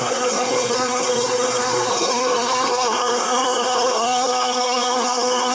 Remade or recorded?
remade